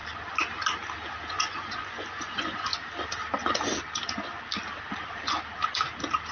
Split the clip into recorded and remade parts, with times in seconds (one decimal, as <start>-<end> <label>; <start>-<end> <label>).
0.0-1.3 recorded; 1.3-2.7 remade; 2.7-6.3 recorded